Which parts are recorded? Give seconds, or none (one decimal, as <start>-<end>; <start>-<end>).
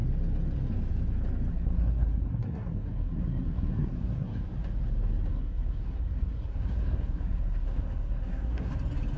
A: 0.0-1.5; 4.4-5.3; 8.7-9.2